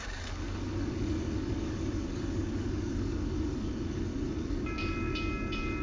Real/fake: fake